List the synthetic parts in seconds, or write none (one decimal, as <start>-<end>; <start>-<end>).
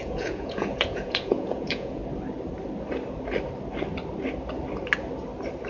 0.0-2.0